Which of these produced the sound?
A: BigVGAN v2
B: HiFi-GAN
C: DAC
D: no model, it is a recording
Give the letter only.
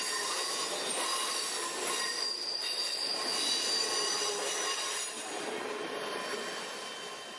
D